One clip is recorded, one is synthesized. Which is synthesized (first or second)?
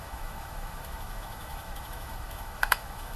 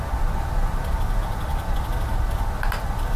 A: first